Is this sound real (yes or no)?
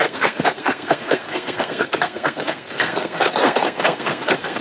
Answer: no